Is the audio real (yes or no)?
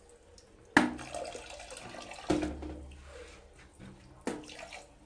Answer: yes